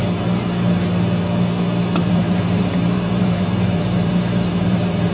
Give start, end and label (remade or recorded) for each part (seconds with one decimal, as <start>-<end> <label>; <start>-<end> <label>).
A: 0.0-2.0 recorded; 2.0-5.1 remade

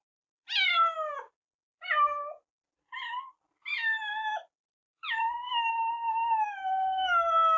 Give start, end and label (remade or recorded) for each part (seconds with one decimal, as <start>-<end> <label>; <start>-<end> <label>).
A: 0.0-4.6 recorded; 4.6-5.7 remade; 5.7-7.6 recorded